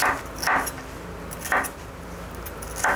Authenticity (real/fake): real